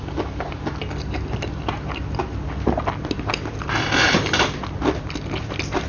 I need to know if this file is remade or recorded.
recorded